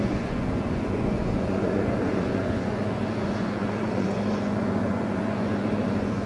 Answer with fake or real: fake